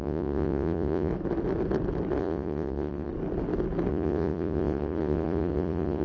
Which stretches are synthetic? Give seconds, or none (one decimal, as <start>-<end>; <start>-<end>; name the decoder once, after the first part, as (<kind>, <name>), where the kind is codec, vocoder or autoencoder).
0.0-1.1 (vocoder, Vocos); 2.2-3.1; 3.9-6.0